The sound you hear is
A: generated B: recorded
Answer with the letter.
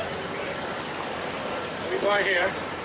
A